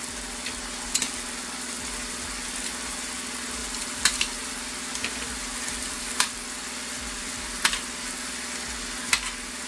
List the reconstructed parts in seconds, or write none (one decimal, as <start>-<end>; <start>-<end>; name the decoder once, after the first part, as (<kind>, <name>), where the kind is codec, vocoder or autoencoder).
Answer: 3.6-7.3 (vocoder, BigVGAN v2)